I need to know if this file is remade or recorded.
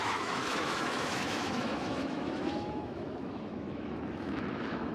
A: remade